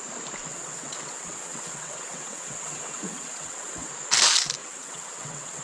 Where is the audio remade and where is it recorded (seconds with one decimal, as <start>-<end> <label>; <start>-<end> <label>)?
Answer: 0.0-0.5 recorded; 0.5-3.9 remade; 3.9-4.6 recorded; 4.6-5.6 remade